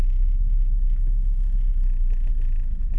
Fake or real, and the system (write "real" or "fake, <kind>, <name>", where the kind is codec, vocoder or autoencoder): real